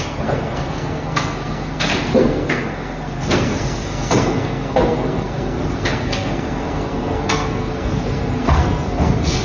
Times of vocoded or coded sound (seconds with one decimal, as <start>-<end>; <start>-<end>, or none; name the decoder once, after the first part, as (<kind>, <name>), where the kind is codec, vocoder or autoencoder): 0.0-9.4 (codec, SNAC)